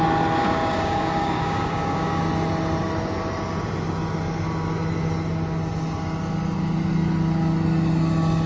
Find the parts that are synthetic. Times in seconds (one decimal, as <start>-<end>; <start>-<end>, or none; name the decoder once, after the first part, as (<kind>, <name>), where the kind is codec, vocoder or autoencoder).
0.4-2.2 (codec, DAC)